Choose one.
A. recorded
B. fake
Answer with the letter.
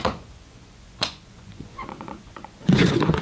B